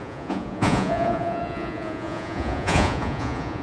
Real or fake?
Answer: fake